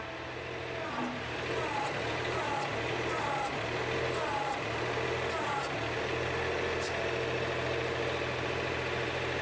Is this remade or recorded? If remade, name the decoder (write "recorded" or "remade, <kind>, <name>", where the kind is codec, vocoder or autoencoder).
recorded